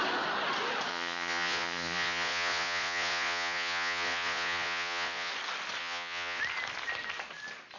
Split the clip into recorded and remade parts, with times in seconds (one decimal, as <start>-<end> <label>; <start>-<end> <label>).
0.0-0.9 recorded; 0.9-5.3 remade; 5.3-5.8 recorded; 5.8-6.4 remade; 6.4-7.8 recorded